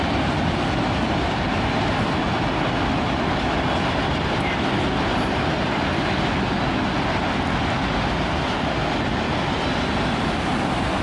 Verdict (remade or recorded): recorded